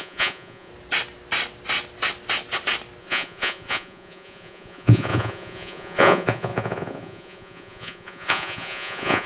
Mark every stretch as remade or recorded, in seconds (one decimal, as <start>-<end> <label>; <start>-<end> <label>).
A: 0.0-0.7 remade; 0.7-3.0 recorded; 3.0-9.3 remade